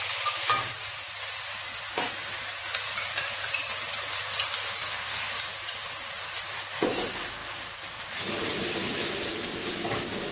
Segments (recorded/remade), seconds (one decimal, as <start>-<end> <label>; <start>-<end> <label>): 0.0-4.8 recorded; 4.8-5.3 remade; 5.3-10.3 recorded